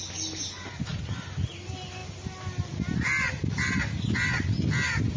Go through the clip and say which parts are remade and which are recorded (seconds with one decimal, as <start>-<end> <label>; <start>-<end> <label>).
0.0-5.2 recorded